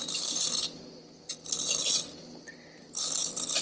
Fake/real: real